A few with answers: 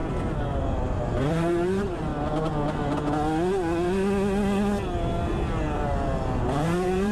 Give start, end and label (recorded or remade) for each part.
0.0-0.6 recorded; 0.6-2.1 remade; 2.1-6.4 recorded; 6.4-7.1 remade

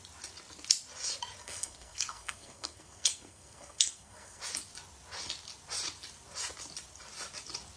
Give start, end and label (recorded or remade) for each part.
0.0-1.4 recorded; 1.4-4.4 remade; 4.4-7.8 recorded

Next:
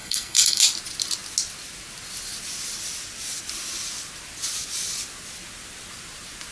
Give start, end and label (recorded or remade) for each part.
0.0-0.6 remade; 0.6-6.5 recorded

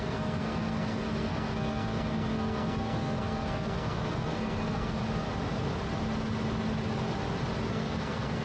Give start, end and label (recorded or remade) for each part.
0.0-5.0 remade; 5.0-7.7 recorded; 7.7-8.4 remade

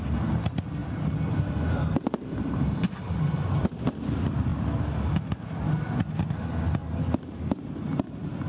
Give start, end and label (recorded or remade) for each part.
0.0-0.8 recorded; 0.8-3.7 remade; 3.7-6.8 recorded; 6.8-7.4 remade; 7.4-8.5 recorded

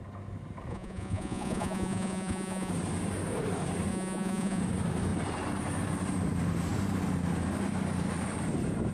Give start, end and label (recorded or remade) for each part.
0.0-0.7 recorded; 0.7-2.7 remade; 2.7-3.9 recorded; 3.9-4.6 remade; 4.6-8.9 recorded